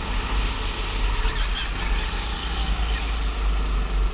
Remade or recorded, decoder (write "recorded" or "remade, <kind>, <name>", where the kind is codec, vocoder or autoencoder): recorded